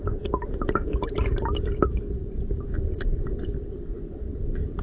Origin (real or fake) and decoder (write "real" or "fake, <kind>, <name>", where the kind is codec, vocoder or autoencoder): fake, vocoder, BigVGAN v2